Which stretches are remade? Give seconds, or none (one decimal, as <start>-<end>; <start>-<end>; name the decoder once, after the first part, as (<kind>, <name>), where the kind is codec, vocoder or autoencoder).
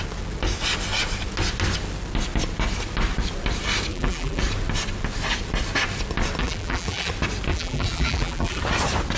3.9-4.4 (vocoder, BigVGAN v2); 6.4-7.1; 7.5-8.6